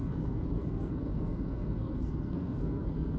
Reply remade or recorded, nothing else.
remade